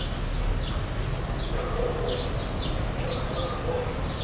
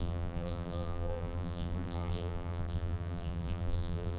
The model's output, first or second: second